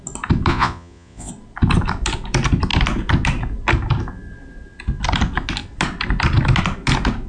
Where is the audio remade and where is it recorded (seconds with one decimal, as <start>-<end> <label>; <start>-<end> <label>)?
0.0-0.5 recorded; 0.5-1.3 remade; 1.3-7.3 recorded